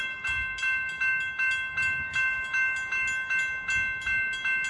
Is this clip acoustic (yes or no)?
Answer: yes